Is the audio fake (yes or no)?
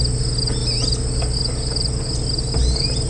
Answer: no